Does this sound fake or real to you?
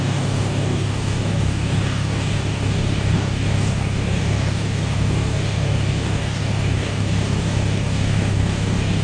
fake